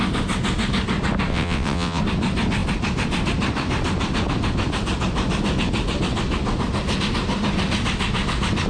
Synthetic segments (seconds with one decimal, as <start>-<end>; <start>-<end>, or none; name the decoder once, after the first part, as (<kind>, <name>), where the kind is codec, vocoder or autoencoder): 1.3-2.0 (vocoder, WaveNeXt)